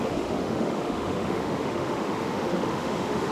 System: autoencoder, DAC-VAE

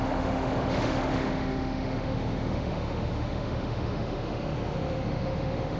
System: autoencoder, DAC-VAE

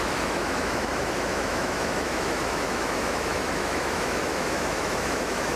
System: autoencoder, DAC-VAE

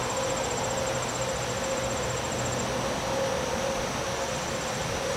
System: none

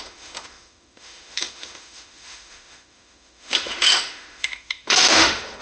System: autoencoder, DAC-VAE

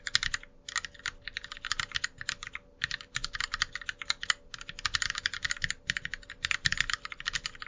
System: none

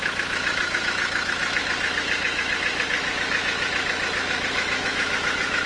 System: autoencoder, DAC-VAE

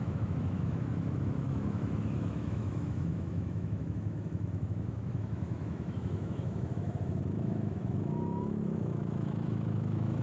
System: autoencoder, DAC-VAE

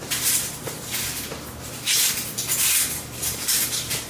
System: none